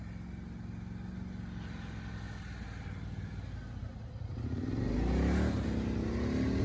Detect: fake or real real